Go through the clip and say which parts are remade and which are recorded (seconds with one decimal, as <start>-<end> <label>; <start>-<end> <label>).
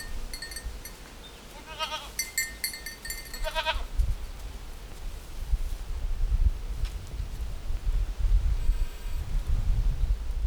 0.0-8.6 recorded; 8.6-9.2 remade; 9.2-10.5 recorded